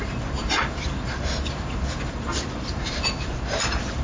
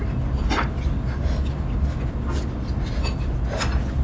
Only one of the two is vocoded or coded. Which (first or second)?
first